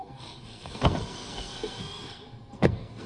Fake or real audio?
fake